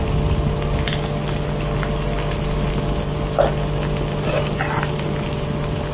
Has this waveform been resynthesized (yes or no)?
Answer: no